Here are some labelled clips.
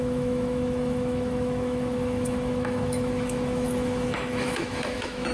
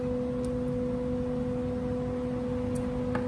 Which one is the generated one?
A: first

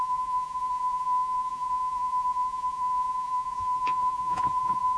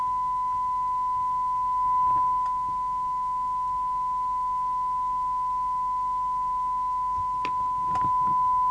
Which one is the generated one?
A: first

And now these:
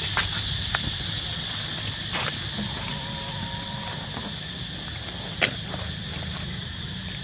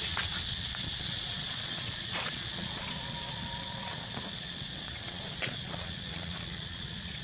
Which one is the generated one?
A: second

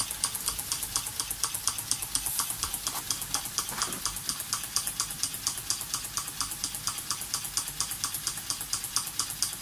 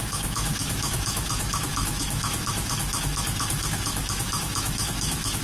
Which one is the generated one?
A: second